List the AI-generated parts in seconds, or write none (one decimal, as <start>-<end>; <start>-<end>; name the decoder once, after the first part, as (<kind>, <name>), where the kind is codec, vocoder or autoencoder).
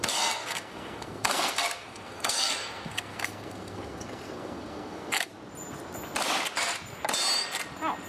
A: 0.0-5.3 (codec, SNAC)